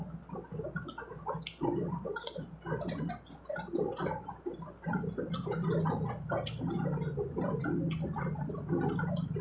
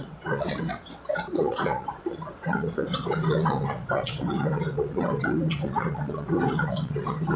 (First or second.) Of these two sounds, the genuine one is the first